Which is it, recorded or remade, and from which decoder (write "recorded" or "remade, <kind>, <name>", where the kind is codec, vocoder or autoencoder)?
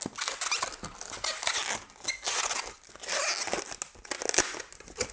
recorded